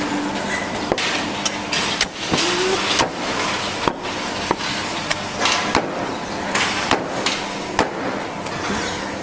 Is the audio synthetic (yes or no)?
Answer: no